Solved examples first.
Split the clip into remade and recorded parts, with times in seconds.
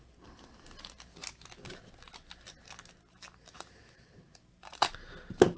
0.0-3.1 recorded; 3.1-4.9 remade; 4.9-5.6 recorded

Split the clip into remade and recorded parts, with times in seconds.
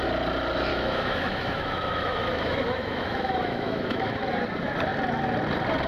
0.0-0.7 recorded; 0.7-4.2 remade; 4.2-5.9 recorded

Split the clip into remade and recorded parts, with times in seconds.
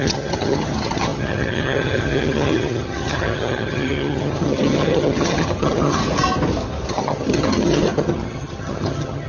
0.0-6.0 remade; 6.0-6.9 recorded; 6.9-9.3 remade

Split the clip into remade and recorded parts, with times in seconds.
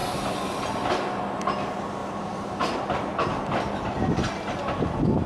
0.0-2.0 recorded; 2.0-2.8 remade; 2.8-5.3 recorded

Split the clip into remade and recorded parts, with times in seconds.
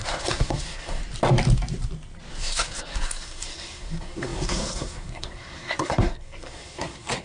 0.0-1.0 remade; 1.0-2.3 recorded; 2.3-7.2 remade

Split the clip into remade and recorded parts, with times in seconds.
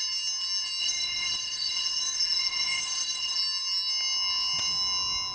0.0-0.8 recorded; 0.8-3.4 remade; 3.4-5.3 recorded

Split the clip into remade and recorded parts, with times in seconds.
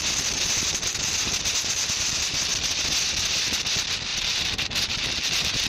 0.0-4.1 recorded; 4.1-5.7 remade